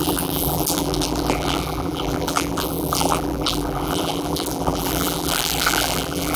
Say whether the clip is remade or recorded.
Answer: remade